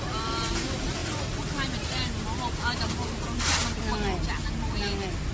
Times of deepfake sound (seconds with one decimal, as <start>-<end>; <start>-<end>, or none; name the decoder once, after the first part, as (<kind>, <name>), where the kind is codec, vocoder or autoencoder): none